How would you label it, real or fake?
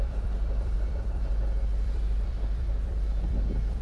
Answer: fake